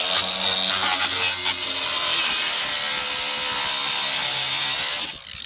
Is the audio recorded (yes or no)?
yes